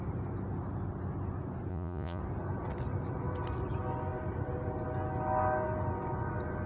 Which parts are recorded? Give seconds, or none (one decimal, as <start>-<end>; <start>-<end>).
0.0-1.7; 2.2-6.7